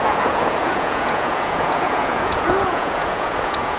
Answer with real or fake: fake